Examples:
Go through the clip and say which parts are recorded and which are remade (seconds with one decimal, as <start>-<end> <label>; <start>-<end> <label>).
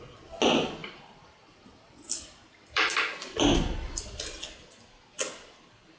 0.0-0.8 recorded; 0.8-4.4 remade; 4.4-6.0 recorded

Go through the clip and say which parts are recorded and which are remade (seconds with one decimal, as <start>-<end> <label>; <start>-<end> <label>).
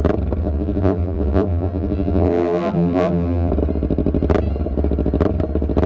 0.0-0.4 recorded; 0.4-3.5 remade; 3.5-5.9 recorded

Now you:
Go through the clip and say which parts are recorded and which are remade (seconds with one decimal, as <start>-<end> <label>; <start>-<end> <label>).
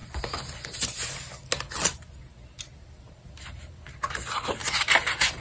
0.0-2.8 recorded; 2.8-4.0 remade; 4.0-5.4 recorded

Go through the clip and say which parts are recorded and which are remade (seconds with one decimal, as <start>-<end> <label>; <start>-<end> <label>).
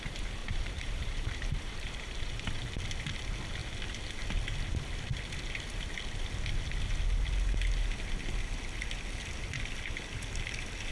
0.0-0.4 recorded; 0.4-2.7 remade; 2.7-10.9 recorded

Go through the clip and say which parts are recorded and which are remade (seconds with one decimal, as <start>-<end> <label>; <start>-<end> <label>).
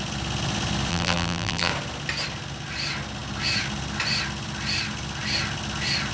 0.0-0.9 recorded; 0.9-1.7 remade; 1.7-6.1 recorded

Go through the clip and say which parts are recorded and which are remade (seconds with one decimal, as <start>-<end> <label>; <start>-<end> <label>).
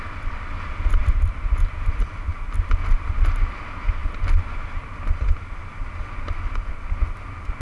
0.0-7.6 recorded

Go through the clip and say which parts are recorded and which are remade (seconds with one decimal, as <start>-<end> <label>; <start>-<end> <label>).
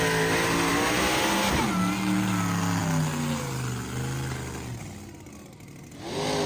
0.0-6.5 recorded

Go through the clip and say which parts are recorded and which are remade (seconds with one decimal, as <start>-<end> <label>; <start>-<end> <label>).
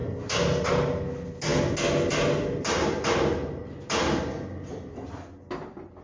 0.0-6.0 recorded